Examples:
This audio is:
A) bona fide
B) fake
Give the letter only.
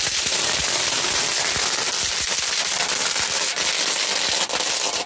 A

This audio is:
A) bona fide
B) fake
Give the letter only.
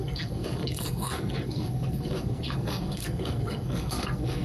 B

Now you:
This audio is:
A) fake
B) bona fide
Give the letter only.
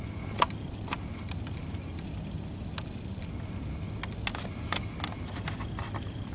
B